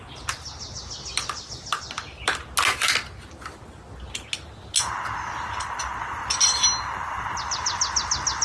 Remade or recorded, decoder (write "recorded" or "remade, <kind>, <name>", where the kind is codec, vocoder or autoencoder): recorded